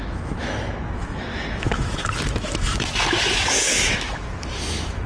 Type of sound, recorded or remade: remade